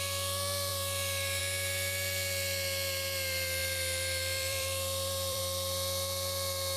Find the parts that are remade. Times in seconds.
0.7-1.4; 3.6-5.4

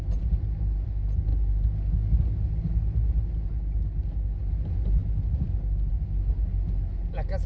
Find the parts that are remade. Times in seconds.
none